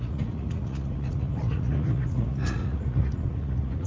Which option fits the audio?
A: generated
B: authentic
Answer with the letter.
A